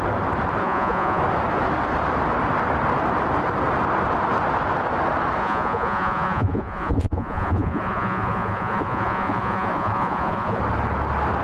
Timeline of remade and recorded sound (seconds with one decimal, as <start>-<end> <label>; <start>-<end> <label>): 0.0-0.6 recorded; 0.6-1.2 remade; 1.2-5.4 recorded; 5.4-10.6 remade; 10.6-11.4 recorded